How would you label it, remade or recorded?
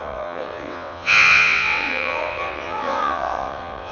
remade